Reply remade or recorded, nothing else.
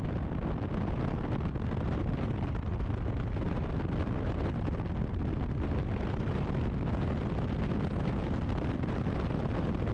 recorded